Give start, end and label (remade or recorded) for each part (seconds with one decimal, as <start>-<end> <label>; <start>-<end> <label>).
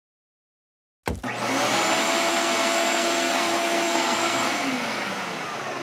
0.0-2.3 recorded; 2.3-5.1 remade; 5.1-5.8 recorded